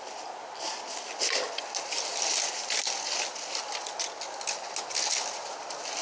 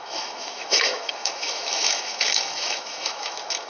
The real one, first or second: first